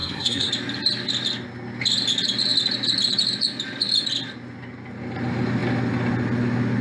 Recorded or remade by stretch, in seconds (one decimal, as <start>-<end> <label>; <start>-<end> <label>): 0.0-0.5 remade; 0.5-6.8 recorded